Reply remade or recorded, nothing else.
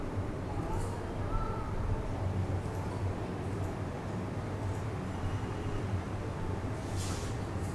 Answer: recorded